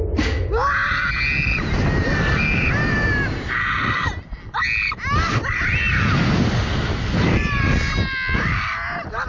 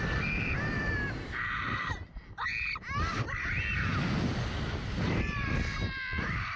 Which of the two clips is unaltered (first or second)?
first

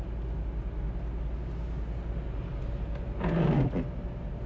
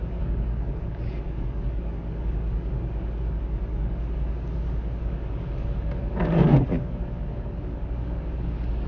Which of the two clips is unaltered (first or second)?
first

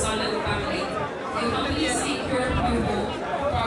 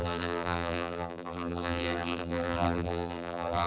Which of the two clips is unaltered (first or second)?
first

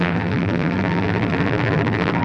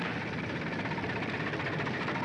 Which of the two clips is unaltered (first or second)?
second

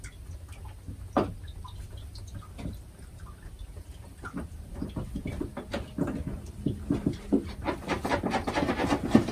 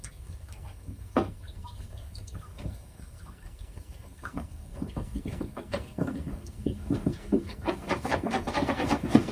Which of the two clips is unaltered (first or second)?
first